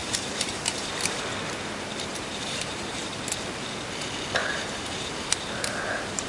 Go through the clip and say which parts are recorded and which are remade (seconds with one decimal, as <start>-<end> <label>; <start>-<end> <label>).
0.0-1.2 remade; 1.2-2.1 recorded; 2.1-3.2 remade; 3.2-4.4 recorded; 4.4-6.3 remade